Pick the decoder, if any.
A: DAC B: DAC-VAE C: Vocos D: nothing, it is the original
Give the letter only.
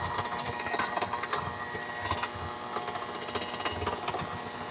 D